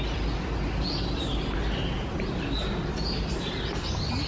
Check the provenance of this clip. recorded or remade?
recorded